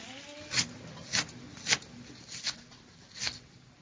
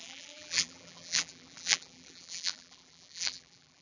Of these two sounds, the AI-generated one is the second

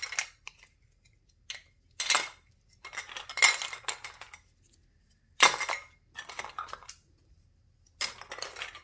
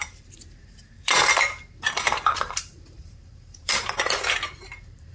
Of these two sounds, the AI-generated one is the second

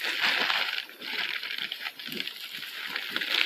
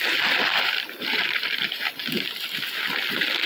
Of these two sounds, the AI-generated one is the second